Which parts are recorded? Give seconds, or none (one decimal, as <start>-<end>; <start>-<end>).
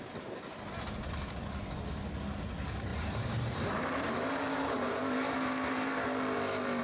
0.0-2.9